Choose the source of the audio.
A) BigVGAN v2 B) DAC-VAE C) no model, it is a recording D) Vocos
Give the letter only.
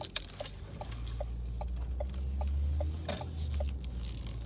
C